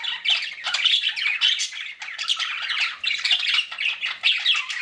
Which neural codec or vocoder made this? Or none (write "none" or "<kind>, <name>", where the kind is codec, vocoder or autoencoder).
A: none